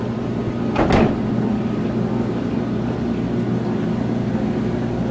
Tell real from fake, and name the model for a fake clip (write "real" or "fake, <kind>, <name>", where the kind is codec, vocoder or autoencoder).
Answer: real